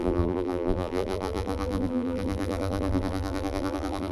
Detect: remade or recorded remade